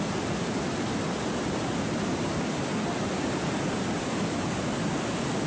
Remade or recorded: recorded